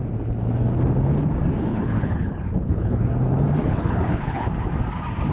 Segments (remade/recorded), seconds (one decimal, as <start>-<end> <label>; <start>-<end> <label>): 0.0-1.7 recorded; 1.7-3.1 remade; 3.1-3.6 recorded; 3.6-4.5 remade; 4.5-5.3 recorded